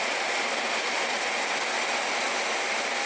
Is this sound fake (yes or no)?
no